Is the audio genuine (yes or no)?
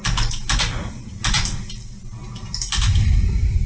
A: yes